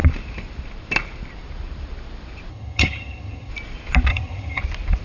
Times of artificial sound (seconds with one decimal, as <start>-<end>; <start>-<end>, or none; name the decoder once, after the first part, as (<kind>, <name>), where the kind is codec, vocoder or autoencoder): 2.5-3.5 (vocoder, HiFi-GAN); 4.1-4.6